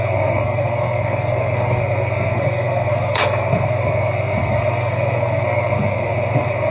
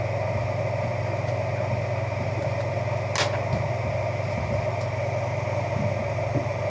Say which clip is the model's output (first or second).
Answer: first